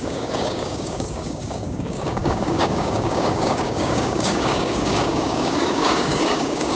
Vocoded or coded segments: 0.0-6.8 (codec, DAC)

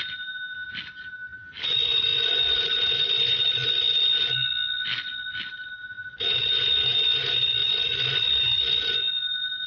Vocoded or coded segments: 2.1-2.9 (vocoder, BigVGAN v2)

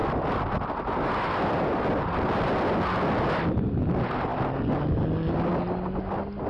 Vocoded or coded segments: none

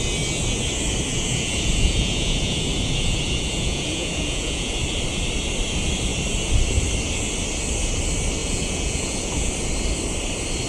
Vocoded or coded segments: 1.1-4.7 (vocoder, Vocos); 8.4-9.5

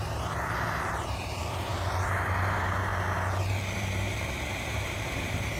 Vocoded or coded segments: 0.0-1.7 (vocoder, BigVGAN v2); 2.4-2.9; 3.7-5.6

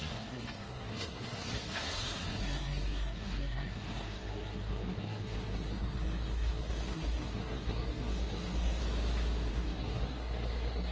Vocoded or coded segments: 0.0-8.8 (codec, SNAC); 9.5-10.9

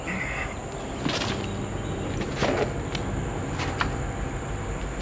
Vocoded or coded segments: none